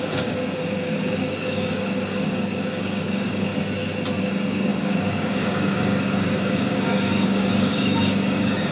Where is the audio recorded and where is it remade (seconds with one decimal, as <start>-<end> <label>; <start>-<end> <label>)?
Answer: 0.0-3.5 remade; 3.5-4.2 recorded; 4.2-8.7 remade